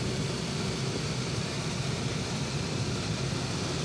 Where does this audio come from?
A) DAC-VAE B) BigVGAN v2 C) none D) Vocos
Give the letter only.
B